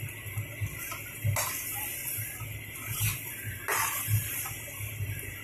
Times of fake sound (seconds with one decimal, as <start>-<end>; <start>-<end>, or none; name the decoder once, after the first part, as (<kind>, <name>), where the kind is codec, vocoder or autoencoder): 3.1-3.6 (vocoder, BigVGAN v2)